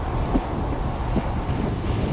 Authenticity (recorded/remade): recorded